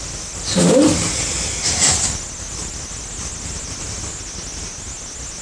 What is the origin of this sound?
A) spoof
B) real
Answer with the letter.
B